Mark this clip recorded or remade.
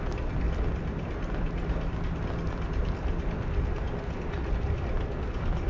recorded